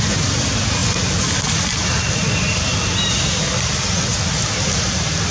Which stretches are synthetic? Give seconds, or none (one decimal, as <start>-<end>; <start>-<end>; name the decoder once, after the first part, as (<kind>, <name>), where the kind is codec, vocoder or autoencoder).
none